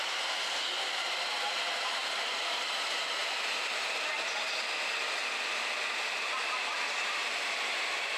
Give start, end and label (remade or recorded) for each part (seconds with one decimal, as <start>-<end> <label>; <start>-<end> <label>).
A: 0.0-3.2 recorded; 3.2-4.1 remade; 4.1-7.2 recorded; 7.2-8.2 remade